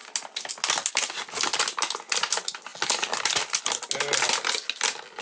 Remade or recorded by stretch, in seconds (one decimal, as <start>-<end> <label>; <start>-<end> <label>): 0.0-5.2 recorded